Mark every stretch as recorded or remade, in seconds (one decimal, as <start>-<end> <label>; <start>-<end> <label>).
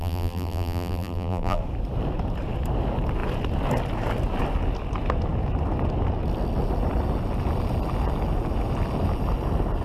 0.0-1.6 remade; 1.6-9.8 recorded